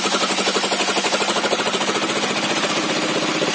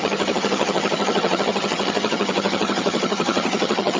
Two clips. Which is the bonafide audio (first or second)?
first